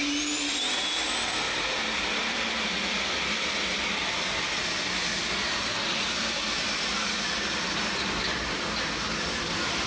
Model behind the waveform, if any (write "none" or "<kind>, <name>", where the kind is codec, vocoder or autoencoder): none